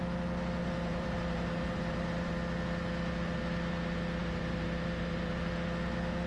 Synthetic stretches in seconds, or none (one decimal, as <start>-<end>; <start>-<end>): 0.6-2.3; 4.2-5.5

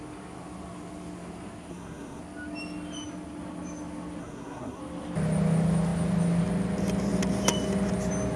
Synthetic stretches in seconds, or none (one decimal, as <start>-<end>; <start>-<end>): 1.7-2.2; 4.2-4.8

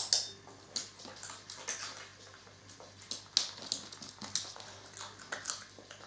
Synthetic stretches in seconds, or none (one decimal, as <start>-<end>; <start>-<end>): none

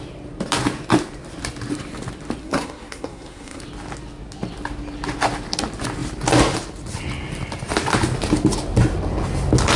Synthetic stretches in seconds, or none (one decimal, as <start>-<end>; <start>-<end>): 2.4-3.6

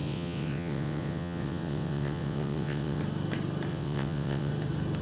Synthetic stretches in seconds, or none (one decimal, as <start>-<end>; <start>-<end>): 0.0-3.0; 3.7-4.5

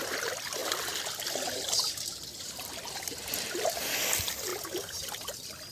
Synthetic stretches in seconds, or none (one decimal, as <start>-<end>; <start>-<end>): none